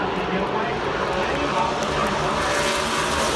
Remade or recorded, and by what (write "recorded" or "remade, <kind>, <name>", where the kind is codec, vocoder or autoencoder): recorded